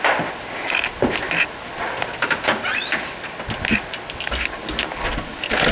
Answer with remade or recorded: recorded